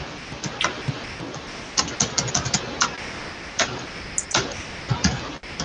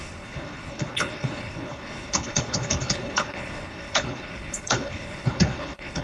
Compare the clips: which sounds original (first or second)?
first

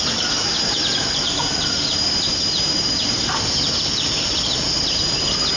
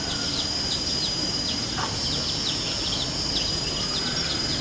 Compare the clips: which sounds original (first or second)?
second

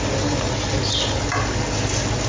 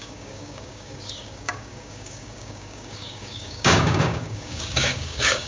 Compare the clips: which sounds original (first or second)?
first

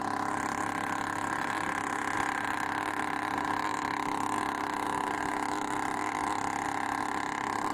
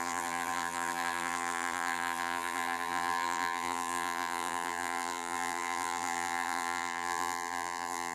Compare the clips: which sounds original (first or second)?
first